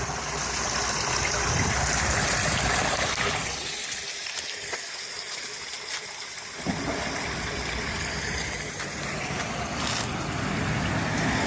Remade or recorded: recorded